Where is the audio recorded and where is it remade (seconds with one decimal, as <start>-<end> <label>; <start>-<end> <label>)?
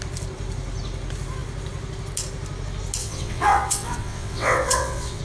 0.0-3.0 recorded; 3.0-5.2 remade